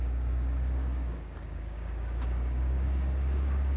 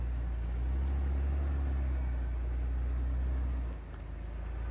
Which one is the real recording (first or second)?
second